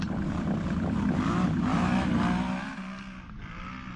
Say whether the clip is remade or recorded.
recorded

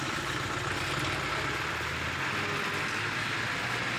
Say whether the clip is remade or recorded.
recorded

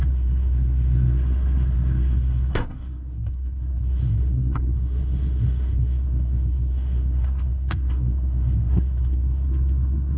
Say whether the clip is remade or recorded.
remade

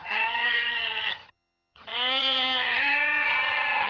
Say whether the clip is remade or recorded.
remade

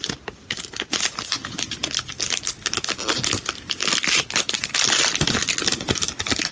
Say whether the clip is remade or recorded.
recorded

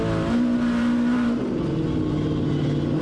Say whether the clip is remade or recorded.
recorded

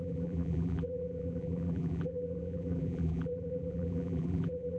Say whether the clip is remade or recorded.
remade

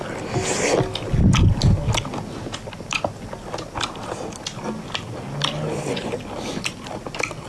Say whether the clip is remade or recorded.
recorded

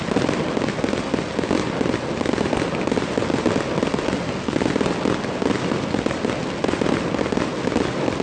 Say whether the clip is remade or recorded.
recorded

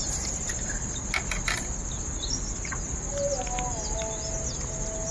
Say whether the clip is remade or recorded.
recorded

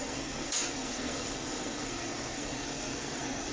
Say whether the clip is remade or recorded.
remade